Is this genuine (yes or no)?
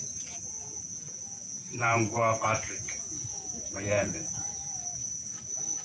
no